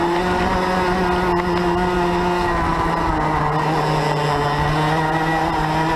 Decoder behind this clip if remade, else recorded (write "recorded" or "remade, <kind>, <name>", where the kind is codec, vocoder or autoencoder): recorded